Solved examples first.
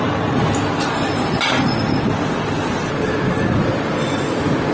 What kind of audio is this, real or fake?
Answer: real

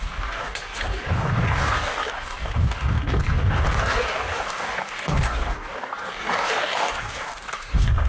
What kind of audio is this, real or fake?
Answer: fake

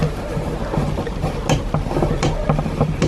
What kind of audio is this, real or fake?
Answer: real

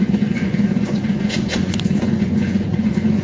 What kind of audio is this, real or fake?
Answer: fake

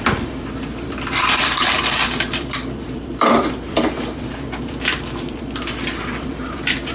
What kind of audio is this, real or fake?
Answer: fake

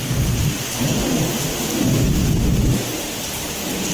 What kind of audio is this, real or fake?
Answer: real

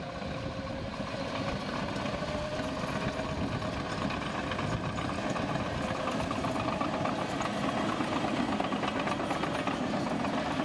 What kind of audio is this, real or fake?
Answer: real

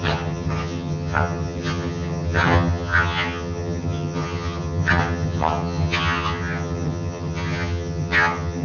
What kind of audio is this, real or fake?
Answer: fake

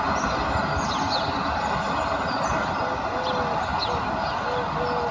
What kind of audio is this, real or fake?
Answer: real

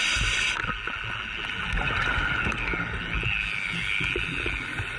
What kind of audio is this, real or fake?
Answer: real